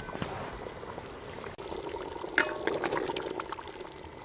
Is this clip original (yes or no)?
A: yes